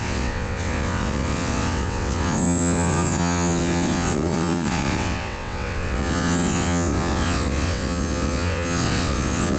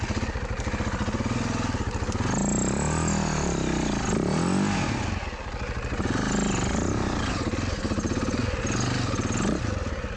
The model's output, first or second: first